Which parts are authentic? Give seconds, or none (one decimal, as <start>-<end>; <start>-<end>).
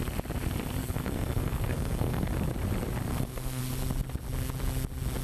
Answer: 0.0-0.8; 2.3-3.1; 3.6-5.2